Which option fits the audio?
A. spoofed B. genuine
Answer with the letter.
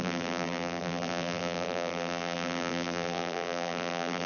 A